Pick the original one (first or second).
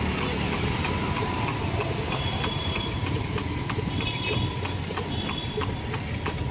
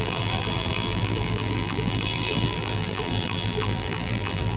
first